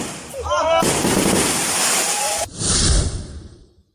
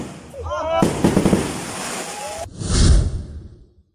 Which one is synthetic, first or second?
first